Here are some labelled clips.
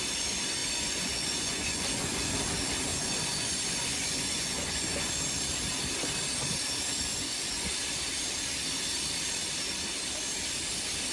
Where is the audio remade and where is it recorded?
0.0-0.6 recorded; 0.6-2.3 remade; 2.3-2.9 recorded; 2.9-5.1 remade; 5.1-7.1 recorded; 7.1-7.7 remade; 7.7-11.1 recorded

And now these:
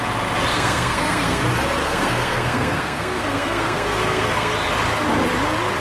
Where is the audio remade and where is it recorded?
0.0-0.5 recorded; 0.5-1.4 remade; 1.4-1.8 recorded; 1.8-4.5 remade; 4.5-5.8 recorded

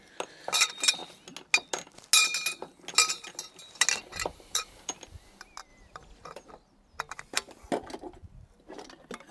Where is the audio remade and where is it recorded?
0.0-4.1 recorded; 4.1-5.3 remade; 5.3-5.7 recorded; 5.7-6.5 remade; 6.5-8.2 recorded; 8.2-8.8 remade; 8.8-9.3 recorded

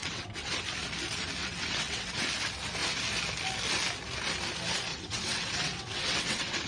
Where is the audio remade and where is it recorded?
0.0-0.5 remade; 0.5-1.4 recorded; 1.4-2.2 remade; 2.2-4.9 recorded; 4.9-6.7 remade

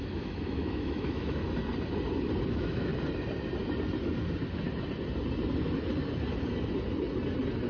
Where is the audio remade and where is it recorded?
0.0-1.4 remade; 1.4-2.5 recorded; 2.5-2.9 remade; 2.9-7.7 recorded

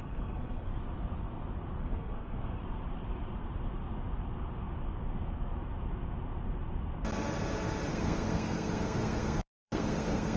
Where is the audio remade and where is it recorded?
0.0-0.7 remade; 0.7-1.8 recorded; 1.8-2.6 remade; 2.6-7.9 recorded; 7.9-10.4 remade

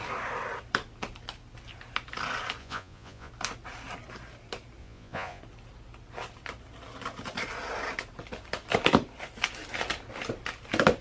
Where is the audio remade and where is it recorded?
0.0-2.6 recorded; 2.6-3.3 remade; 3.3-4.8 recorded; 4.8-5.4 remade; 5.4-11.0 recorded

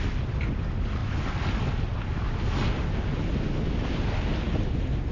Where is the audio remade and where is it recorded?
0.0-5.1 recorded